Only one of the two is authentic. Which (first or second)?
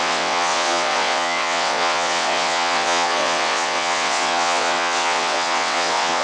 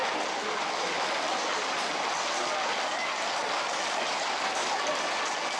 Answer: second